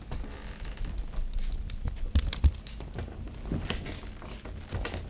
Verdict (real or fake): real